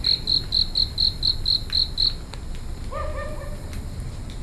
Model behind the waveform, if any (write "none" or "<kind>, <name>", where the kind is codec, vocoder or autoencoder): none